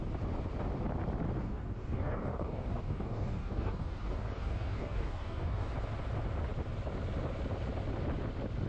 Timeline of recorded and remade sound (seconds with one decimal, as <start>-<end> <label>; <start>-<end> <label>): 0.0-1.4 recorded; 1.4-5.7 remade; 5.7-8.7 recorded